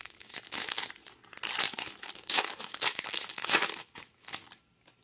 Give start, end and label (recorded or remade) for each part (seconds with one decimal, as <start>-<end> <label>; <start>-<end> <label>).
0.0-0.9 remade; 0.9-1.6 recorded; 1.6-4.5 remade; 4.5-5.0 recorded